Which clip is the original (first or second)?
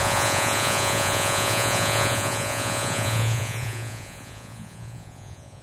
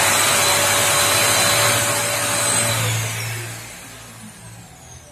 second